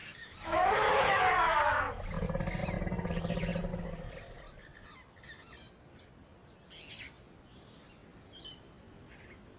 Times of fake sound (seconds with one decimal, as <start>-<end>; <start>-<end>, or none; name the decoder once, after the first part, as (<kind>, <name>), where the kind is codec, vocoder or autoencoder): 0.0-1.6 (autoencoder, DAC-VAE)